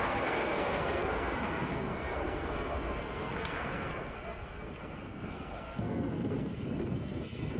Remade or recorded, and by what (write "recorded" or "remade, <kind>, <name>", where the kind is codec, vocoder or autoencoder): remade, codec, SNAC